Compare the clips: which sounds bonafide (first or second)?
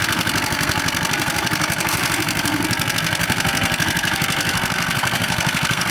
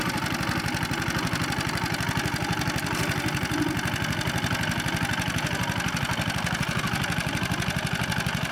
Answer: second